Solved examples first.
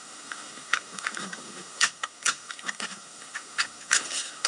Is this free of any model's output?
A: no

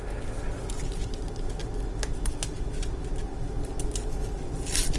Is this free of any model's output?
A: yes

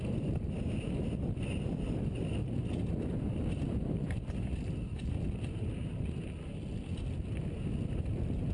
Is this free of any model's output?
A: yes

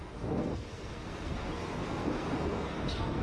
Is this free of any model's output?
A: no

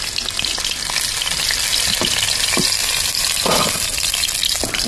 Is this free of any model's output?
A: yes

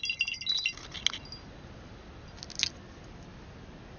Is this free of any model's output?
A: yes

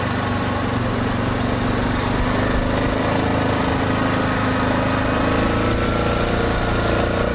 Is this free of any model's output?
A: yes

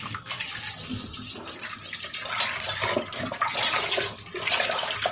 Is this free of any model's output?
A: yes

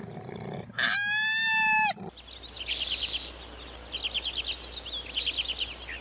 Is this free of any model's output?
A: yes